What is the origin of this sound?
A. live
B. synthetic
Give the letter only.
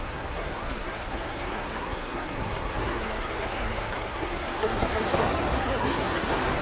B